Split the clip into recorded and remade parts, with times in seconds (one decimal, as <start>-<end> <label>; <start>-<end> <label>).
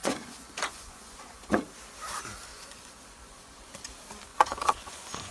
0.0-1.6 remade; 1.6-2.5 recorded; 2.5-3.7 remade; 3.7-4.3 recorded; 4.3-5.3 remade